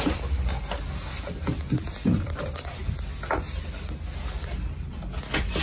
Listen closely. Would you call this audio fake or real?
real